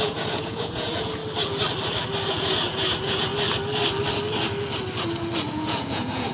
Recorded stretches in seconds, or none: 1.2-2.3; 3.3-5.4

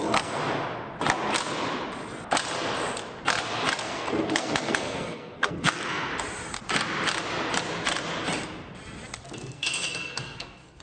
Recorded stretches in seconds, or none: 0.4-3.8; 6.1-9.5

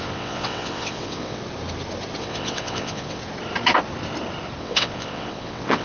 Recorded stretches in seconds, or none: 1.4-2.2; 3.2-4.6

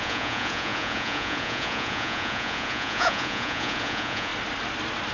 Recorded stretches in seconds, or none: 4.3-5.1

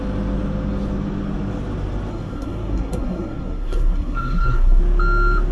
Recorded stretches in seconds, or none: 0.0-2.1; 4.8-5.5